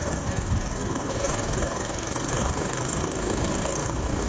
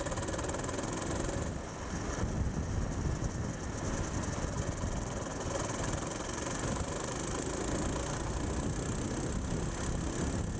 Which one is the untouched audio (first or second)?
second